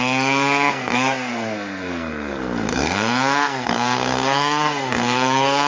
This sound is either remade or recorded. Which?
remade